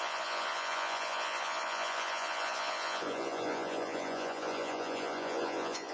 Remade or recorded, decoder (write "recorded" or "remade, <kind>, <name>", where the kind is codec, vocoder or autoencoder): remade, vocoder, Vocos